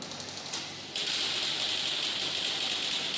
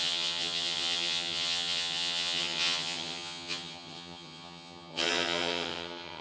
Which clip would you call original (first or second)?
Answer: first